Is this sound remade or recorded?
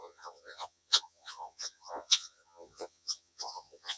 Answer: remade